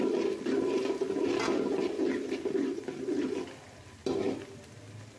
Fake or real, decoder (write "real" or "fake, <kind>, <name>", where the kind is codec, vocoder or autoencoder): real